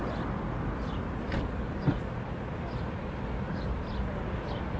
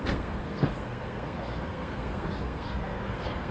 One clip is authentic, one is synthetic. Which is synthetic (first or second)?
second